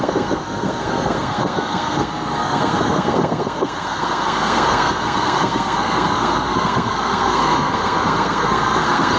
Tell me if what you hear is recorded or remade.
remade